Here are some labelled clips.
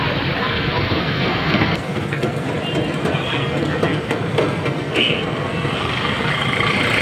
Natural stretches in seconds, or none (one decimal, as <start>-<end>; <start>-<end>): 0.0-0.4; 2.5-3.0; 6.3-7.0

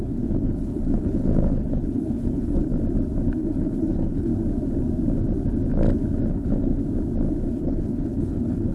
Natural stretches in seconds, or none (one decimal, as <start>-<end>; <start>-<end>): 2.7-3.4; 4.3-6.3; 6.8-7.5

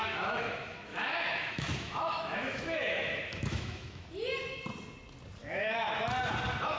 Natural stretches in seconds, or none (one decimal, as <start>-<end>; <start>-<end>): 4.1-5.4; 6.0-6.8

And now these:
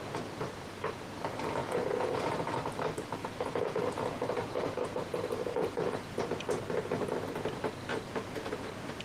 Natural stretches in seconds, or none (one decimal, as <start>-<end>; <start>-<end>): 0.0-1.6; 2.2-3.2; 6.2-7.9

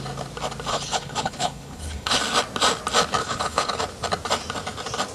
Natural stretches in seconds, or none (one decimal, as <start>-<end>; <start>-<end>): 0.0-0.7; 2.2-3.2; 3.8-5.1

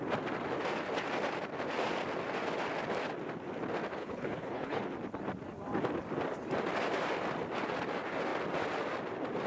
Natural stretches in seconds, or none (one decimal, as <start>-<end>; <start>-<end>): 0.0-4.0; 4.8-9.5

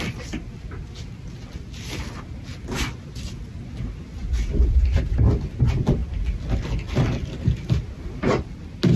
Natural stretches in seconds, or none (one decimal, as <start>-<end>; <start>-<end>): 0.0-9.0